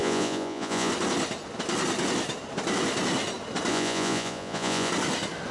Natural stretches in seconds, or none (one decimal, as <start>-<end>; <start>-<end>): 0.9-3.7; 4.9-5.5